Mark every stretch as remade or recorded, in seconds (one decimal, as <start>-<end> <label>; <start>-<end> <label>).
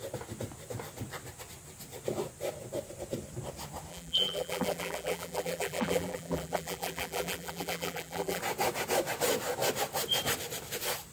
0.0-3.9 recorded; 3.9-8.4 remade; 8.4-11.1 recorded